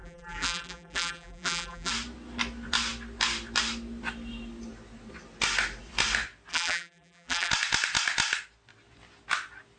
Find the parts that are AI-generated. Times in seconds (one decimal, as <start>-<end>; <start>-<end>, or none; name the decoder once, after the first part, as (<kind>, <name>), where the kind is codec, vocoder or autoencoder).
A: 0.0-1.9 (vocoder, BigVGAN v2); 6.5-7.5

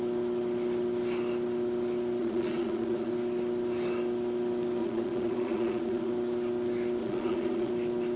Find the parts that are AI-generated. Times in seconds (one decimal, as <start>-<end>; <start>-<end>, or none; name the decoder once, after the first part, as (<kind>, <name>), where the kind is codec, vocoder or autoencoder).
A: 2.2-3.1 (vocoder, Vocos); 4.8-6.1; 7.0-7.7

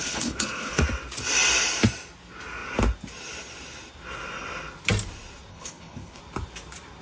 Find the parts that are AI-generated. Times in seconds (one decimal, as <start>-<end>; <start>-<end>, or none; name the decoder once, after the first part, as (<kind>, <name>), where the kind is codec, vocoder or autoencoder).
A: 0.0-0.8 (codec, HILCodec); 5.5-6.2

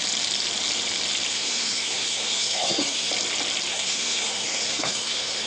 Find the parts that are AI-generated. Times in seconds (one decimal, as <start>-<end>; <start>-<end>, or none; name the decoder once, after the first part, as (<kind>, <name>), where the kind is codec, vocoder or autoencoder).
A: 1.3-3.1 (codec, SNAC); 3.7-5.5